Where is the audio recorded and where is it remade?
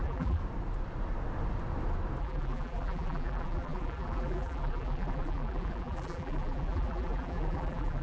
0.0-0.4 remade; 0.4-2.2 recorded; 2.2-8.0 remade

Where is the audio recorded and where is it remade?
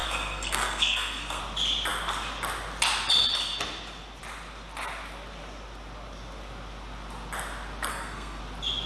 0.0-1.4 remade; 1.4-7.9 recorded; 7.9-8.4 remade; 8.4-8.9 recorded